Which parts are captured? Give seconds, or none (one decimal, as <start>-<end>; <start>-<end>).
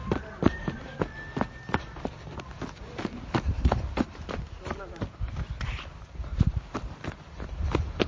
0.0-0.5; 1.1-6.0